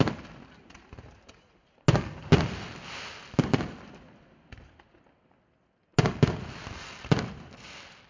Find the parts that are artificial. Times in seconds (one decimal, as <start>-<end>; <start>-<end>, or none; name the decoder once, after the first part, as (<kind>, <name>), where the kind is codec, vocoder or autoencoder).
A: none